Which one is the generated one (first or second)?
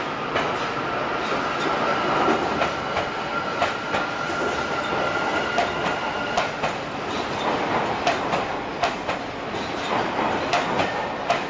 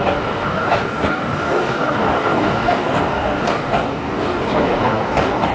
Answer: second